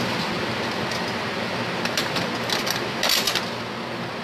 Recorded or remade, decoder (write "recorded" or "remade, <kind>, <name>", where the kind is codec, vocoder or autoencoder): recorded